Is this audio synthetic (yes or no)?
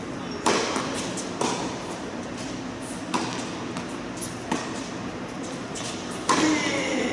no